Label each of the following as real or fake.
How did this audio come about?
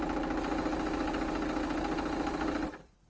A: real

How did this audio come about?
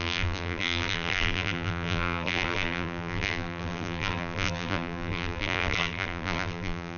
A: fake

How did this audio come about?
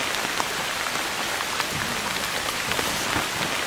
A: fake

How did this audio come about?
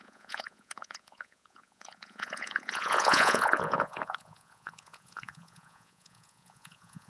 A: fake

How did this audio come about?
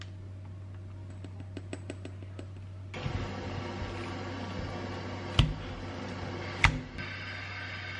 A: real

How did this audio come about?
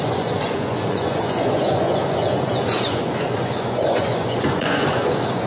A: fake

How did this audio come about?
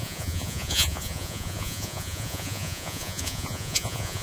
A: fake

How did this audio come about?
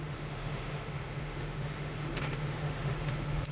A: fake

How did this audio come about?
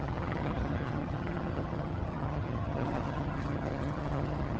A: fake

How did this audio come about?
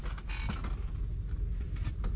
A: real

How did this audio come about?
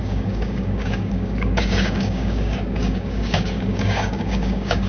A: fake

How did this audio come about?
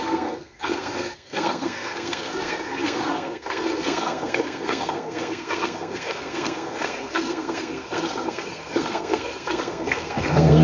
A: fake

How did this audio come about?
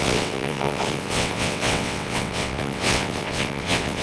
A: fake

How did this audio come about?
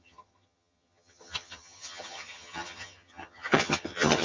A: fake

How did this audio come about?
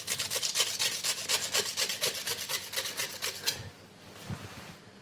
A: real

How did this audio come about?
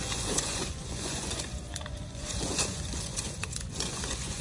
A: fake